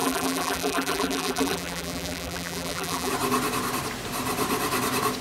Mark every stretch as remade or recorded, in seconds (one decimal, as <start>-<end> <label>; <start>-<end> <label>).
0.0-3.1 remade; 3.1-5.2 recorded